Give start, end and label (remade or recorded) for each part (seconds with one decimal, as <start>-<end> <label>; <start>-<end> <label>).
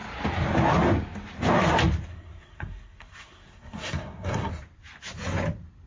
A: 0.0-2.1 recorded; 2.1-4.5 remade; 4.5-5.9 recorded